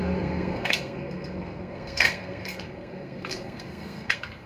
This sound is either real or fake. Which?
fake